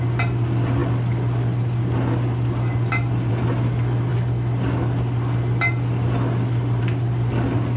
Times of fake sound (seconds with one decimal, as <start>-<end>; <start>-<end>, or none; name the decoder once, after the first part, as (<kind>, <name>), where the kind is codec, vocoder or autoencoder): none